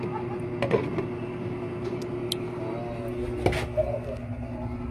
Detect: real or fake real